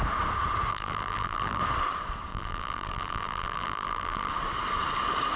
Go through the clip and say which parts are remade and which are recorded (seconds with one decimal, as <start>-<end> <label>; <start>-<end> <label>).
0.0-0.7 recorded; 0.7-1.6 remade; 1.6-2.3 recorded; 2.3-4.3 remade; 4.3-5.4 recorded